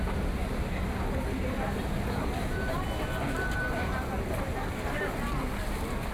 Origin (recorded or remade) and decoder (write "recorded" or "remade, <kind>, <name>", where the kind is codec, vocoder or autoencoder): recorded